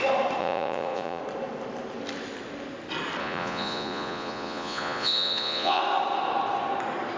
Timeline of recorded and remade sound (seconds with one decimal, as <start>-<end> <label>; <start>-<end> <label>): 0.0-0.4 recorded; 0.4-1.2 remade; 1.2-3.2 recorded; 3.2-5.8 remade; 5.8-7.2 recorded